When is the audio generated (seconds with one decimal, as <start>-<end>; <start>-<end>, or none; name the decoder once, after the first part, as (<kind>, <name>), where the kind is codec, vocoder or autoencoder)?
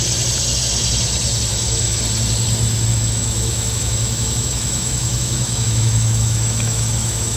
1.5-2.0 (autoencoder, DAC-VAE); 2.9-7.4